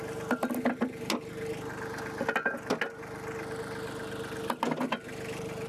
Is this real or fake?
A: real